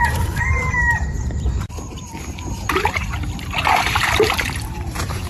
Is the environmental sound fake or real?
fake